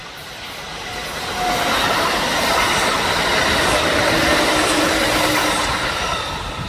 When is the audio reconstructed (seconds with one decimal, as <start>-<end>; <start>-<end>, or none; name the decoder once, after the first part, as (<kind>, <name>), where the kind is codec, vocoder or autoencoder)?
0.0-0.7 (vocoder, BigVGAN v2)